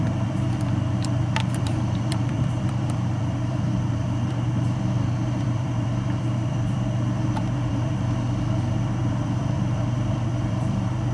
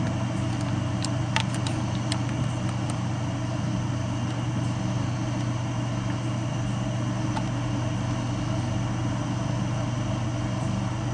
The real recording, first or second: second